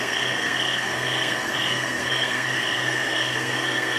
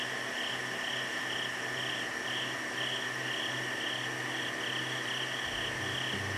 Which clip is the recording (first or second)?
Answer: second